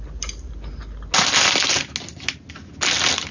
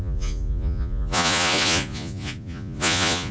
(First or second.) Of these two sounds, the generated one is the second